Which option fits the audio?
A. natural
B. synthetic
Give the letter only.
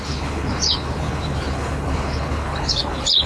B